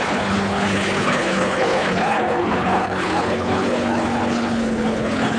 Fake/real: fake